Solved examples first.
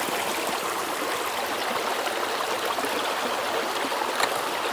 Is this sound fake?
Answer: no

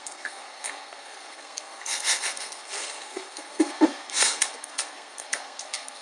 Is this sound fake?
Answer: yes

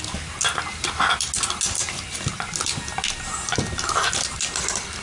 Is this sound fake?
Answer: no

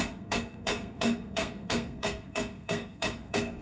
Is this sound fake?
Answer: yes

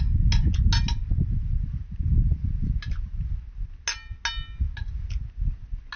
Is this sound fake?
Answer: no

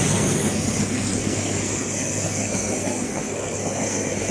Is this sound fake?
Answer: yes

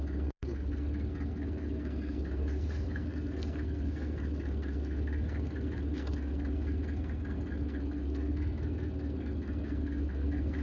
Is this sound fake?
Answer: yes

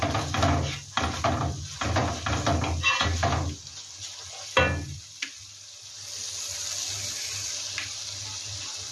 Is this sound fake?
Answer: no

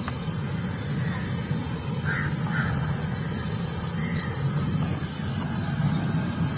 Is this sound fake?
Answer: no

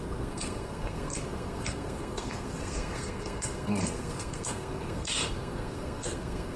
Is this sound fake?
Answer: yes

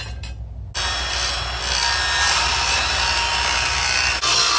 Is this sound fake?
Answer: no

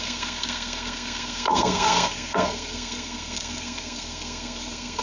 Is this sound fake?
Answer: yes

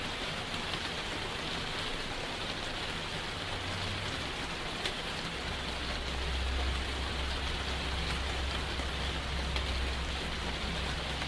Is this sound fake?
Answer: no